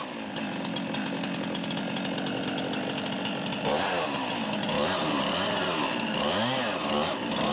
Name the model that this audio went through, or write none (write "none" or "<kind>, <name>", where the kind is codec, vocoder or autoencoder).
none